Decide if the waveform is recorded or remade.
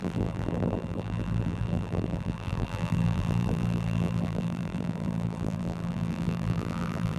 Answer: remade